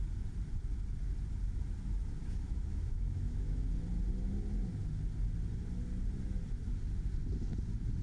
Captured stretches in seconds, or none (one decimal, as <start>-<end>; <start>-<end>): 0.0-2.2; 3.6-8.0